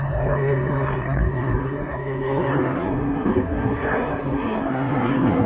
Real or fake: fake